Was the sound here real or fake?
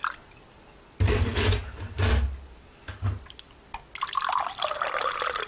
real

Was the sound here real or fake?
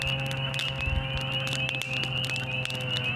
real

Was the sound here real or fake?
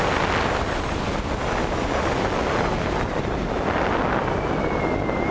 real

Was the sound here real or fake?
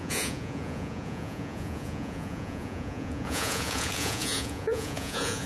fake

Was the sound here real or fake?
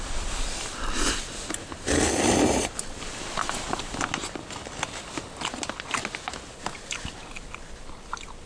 real